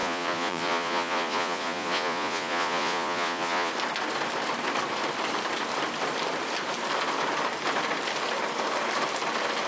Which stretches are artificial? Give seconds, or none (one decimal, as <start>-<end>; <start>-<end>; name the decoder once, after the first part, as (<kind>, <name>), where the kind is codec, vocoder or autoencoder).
0.0-3.7 (vocoder, Vocos)

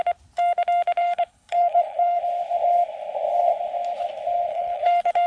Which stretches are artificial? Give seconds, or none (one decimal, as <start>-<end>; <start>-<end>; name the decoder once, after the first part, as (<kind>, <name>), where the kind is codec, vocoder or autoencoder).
1.0-2.2 (codec, HILCodec); 4.5-5.3